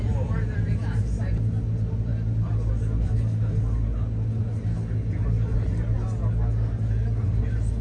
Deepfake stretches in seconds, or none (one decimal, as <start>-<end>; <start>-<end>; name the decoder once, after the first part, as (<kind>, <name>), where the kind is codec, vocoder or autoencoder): none